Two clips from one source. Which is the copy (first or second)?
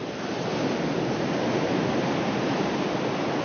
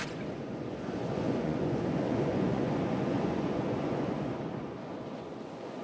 second